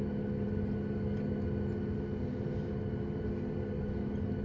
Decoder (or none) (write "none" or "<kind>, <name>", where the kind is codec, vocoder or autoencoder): none